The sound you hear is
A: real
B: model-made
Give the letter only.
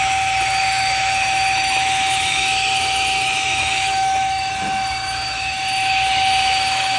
B